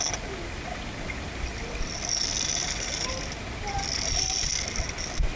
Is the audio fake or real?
real